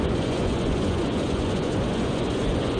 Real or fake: fake